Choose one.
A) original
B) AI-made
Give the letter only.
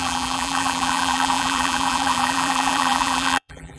B